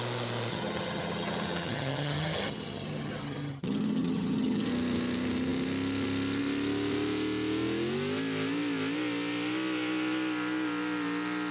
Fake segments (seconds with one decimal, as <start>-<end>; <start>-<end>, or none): 0.5-4.7